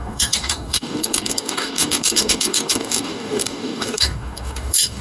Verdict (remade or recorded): remade